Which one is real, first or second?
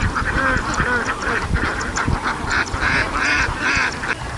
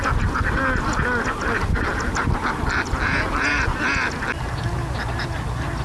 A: second